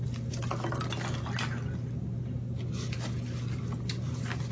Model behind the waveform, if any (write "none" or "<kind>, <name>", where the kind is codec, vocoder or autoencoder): none